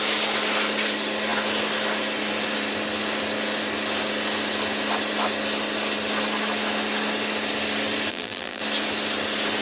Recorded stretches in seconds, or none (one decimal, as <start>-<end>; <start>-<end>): 0.0-8.1; 8.6-9.6